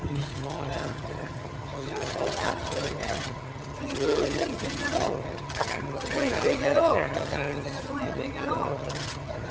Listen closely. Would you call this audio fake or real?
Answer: fake